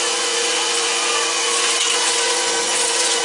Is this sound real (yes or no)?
no